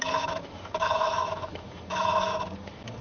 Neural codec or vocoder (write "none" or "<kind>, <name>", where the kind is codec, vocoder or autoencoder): autoencoder, DAC-VAE